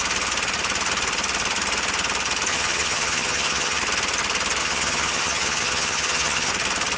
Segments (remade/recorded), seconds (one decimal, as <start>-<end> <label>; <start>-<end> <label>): 0.0-2.5 recorded; 2.5-3.8 remade; 3.8-4.6 recorded; 4.6-6.5 remade; 6.5-7.0 recorded